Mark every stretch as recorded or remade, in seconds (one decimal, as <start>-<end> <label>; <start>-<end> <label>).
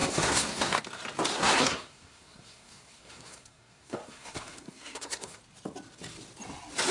0.0-0.8 remade; 0.8-1.3 recorded; 1.3-5.4 remade; 5.4-6.9 recorded